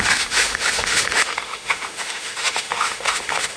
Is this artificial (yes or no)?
yes